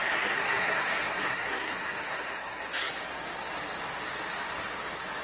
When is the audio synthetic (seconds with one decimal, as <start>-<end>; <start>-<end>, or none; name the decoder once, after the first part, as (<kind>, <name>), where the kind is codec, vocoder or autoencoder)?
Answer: 0.0-2.9 (codec, SNAC)

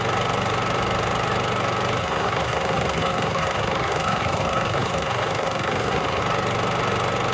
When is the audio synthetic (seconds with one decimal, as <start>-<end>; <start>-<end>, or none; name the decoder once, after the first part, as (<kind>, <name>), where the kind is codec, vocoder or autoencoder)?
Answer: 2.0-6.2 (codec, SNAC)

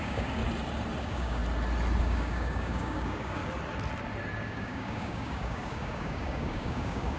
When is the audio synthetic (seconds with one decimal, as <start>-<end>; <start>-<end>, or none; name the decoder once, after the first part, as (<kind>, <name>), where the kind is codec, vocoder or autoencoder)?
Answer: 0.0-0.4 (codec, DAC); 1.0-1.4; 2.0-3.4; 4.4-7.2

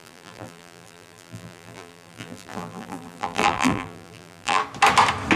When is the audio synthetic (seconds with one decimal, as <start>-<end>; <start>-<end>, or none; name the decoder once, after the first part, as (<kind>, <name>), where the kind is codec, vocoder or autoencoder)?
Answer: 0.0-4.6 (vocoder, BigVGAN v2)

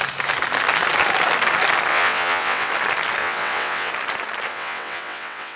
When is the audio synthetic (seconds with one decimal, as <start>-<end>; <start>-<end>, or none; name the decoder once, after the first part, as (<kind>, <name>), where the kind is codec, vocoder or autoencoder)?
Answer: 1.9-2.7 (vocoder, WaveNeXt); 3.2-3.9; 4.5-5.6

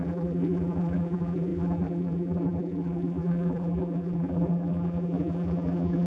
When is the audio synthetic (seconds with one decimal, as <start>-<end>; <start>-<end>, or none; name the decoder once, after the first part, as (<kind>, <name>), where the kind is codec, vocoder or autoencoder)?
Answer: 0.0-6.1 (vocoder, BigVGAN v2)

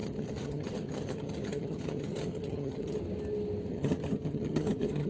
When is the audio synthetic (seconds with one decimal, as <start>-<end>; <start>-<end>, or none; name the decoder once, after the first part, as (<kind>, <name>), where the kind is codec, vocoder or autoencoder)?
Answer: 0.0-3.0 (vocoder, HiFi-GAN); 3.7-5.1

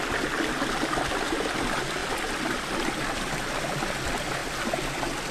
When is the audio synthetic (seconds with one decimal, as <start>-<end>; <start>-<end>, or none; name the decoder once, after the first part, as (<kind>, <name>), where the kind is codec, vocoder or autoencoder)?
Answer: none